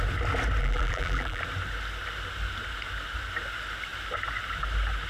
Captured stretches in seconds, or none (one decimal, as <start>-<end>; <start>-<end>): 0.0-0.6; 1.4-5.1